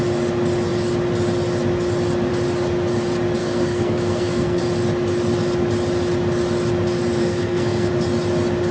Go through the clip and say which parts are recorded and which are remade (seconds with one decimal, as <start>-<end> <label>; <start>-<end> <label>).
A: 0.0-3.4 recorded; 3.4-4.6 remade; 4.6-7.2 recorded; 7.2-7.9 remade; 7.9-8.7 recorded